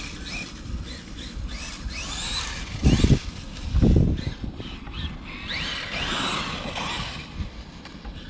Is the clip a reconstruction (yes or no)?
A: no